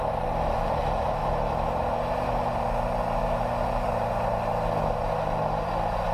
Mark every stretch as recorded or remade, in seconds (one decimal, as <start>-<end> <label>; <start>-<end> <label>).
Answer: 0.0-6.1 recorded